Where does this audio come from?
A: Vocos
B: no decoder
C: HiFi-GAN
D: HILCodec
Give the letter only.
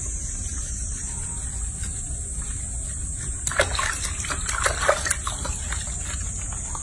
B